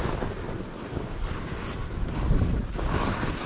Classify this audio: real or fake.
real